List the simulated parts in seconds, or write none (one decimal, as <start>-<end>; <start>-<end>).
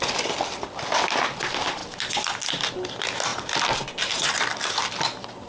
1.8-2.5